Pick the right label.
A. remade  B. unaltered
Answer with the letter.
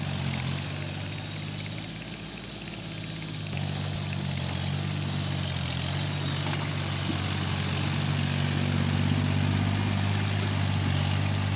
B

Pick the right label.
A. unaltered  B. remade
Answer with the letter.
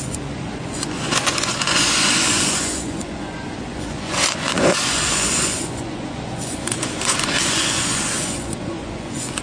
B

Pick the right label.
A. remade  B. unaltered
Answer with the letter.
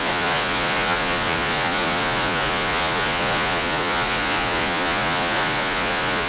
A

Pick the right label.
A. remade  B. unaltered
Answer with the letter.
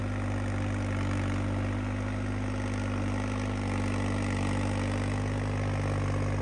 B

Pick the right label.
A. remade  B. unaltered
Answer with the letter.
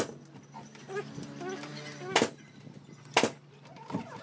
B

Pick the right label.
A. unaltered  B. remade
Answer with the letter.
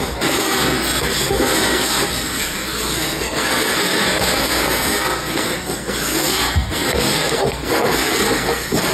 B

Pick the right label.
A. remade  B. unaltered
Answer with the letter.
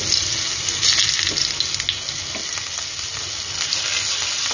B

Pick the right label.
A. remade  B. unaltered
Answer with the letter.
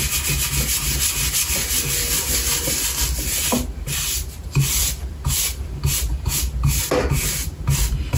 B